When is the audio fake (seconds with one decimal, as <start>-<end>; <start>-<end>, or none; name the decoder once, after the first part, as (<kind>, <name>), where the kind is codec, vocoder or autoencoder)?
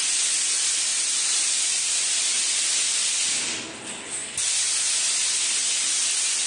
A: 0.9-2.4 (vocoder, BigVGAN v2)